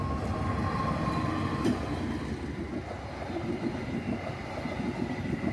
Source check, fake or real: real